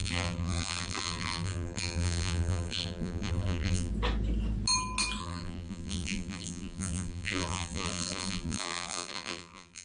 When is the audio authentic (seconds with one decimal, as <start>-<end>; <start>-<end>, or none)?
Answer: 3.9-5.2